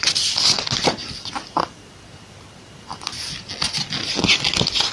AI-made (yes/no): no